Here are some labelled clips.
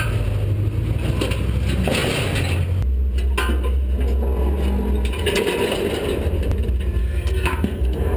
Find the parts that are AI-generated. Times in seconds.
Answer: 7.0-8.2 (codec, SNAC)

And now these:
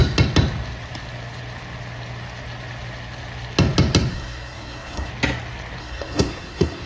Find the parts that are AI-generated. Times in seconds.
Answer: 4.1-5.1 (codec, SNAC); 5.8-6.9

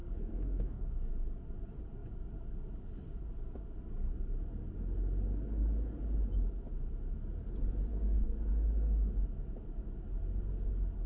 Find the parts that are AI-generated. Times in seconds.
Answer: 0.0-1.1 (codec, SNAC); 7.9-8.5

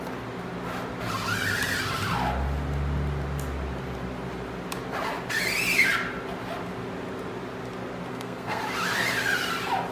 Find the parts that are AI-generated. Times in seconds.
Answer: 8.1-8.6 (codec, SNAC)

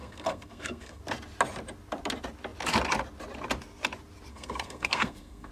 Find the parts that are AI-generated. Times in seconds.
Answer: 0.0-1.0 (codec, SNAC); 4.3-5.5